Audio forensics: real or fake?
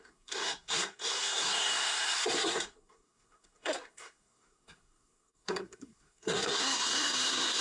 fake